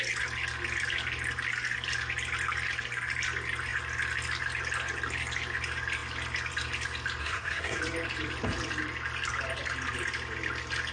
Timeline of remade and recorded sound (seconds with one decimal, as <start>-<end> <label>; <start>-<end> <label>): 0.0-7.2 recorded; 7.2-7.8 remade; 7.8-10.9 recorded